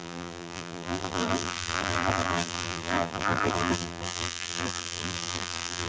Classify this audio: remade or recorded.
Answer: remade